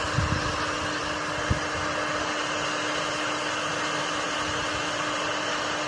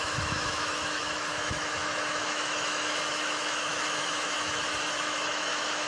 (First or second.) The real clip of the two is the first